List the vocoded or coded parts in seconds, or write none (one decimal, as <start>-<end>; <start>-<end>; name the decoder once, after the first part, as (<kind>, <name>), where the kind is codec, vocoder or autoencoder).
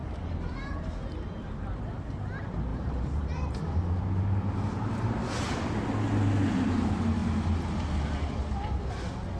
0.0-0.9 (vocoder, BigVGAN v2); 2.7-3.8